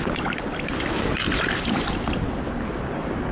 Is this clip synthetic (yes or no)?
no